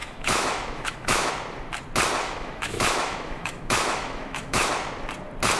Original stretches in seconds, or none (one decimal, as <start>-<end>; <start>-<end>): 1.3-2.2; 4.7-5.6